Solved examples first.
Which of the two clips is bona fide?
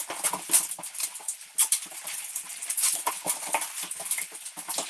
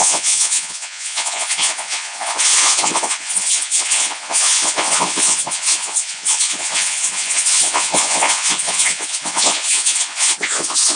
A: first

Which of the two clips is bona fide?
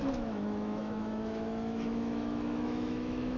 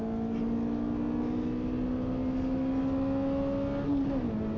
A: second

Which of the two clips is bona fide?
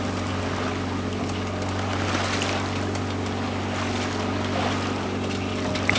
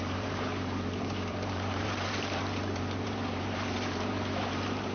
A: first